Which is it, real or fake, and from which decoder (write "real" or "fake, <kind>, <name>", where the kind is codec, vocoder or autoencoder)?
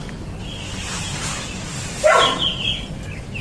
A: real